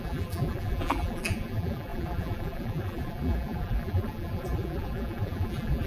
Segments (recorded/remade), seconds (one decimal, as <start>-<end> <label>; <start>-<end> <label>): 0.0-5.9 remade